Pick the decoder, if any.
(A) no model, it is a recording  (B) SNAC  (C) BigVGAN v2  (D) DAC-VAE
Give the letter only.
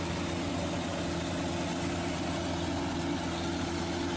A